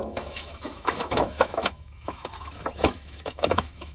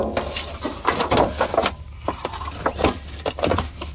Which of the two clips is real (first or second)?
second